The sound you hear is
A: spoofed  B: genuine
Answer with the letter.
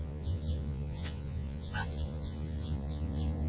A